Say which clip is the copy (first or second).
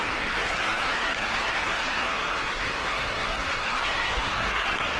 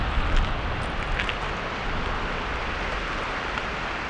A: first